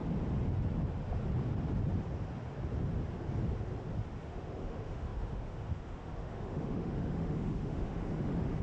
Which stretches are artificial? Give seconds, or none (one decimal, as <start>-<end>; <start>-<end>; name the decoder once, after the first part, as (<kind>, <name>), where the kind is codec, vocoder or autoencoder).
4.2-8.6 (autoencoder, DAC-VAE)